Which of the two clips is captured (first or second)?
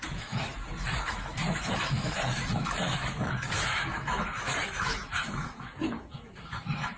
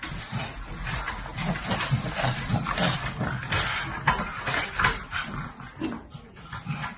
second